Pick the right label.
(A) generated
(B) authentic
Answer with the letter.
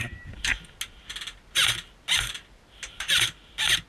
B